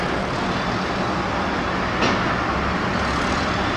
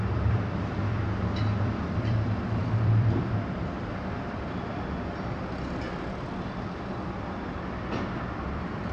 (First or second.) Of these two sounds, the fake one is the second